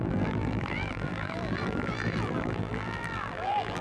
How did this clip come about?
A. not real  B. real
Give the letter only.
A